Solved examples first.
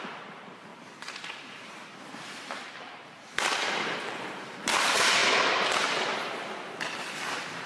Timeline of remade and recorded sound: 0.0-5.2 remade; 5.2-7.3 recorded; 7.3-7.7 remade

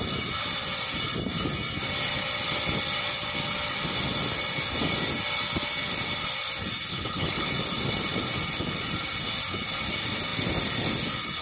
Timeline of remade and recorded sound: 0.0-6.9 recorded; 6.9-7.5 remade; 7.5-11.4 recorded

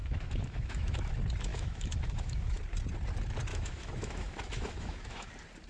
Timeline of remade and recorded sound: 0.0-1.1 remade; 1.1-1.5 recorded; 1.5-2.6 remade; 2.6-3.5 recorded; 3.5-5.3 remade; 5.3-5.7 recorded

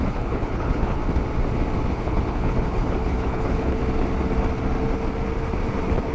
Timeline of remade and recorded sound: 0.0-1.0 remade; 1.0-1.9 recorded; 1.9-3.8 remade; 3.8-6.1 recorded

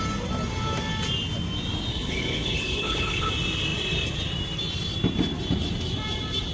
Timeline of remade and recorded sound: 0.0-1.9 recorded; 1.9-3.3 remade; 3.3-6.5 recorded

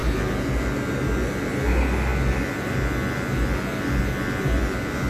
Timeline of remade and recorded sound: 0.0-5.1 recorded

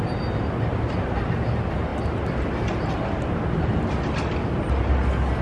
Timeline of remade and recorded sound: 0.0-5.4 recorded

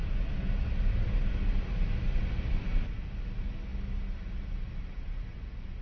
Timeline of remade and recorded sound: 0.0-5.8 recorded